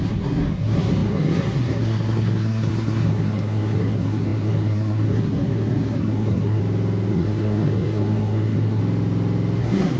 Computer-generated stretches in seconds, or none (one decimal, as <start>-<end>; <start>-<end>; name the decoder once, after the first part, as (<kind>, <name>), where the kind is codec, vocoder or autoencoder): 0.0-6.6 (codec, SNAC); 7.1-8.8; 9.6-10.0

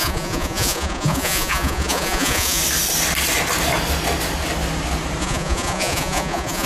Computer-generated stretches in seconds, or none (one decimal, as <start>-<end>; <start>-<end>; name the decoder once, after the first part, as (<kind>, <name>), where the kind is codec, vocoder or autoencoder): 0.0-2.6 (vocoder, Vocos); 5.2-6.7

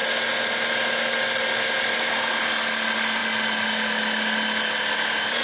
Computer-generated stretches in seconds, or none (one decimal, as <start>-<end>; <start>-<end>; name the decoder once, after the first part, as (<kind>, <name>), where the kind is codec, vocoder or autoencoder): none

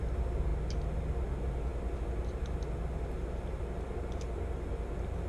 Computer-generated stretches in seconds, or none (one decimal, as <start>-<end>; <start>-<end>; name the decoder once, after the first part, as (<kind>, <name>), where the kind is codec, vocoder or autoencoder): none